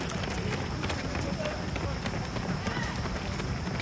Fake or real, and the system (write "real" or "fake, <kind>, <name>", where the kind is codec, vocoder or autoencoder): real